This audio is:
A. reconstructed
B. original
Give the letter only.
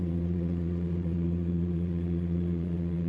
A